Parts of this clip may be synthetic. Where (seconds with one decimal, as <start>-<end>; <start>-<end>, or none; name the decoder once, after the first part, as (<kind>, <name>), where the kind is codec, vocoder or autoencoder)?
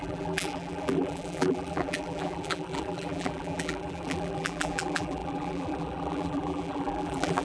0.0-7.4 (vocoder, BigVGAN v2)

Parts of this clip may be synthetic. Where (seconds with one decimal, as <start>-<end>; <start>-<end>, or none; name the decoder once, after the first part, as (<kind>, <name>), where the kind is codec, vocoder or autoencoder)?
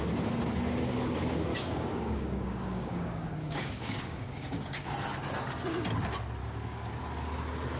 1.5-4.9 (codec, DAC); 6.4-7.0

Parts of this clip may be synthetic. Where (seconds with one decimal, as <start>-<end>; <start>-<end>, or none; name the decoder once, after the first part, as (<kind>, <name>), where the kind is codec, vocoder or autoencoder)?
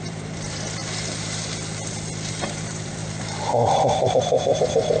0.0-0.8 (vocoder, BigVGAN v2); 2.3-3.0; 4.1-5.0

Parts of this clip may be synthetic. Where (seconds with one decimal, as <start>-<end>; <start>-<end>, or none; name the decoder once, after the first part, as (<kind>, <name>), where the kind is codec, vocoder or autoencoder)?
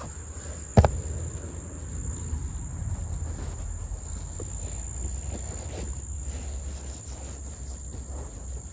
none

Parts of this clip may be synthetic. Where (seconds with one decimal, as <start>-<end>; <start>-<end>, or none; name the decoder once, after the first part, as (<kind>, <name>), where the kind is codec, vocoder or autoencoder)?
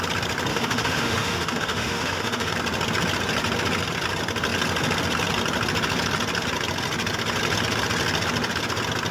0.5-2.5 (autoencoder, DAC-VAE)